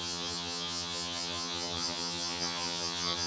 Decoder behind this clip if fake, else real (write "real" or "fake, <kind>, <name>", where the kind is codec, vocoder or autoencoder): fake, vocoder, HiFi-GAN